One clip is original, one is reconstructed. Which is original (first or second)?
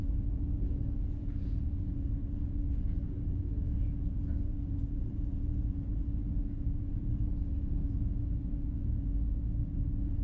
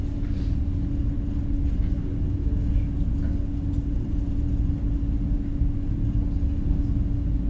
second